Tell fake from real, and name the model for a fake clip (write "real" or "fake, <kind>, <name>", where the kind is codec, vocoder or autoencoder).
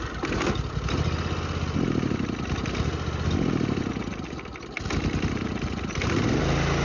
real